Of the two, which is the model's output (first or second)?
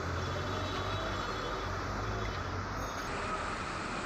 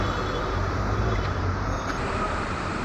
second